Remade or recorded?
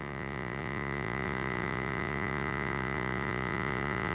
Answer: remade